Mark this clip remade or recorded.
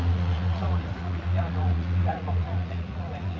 remade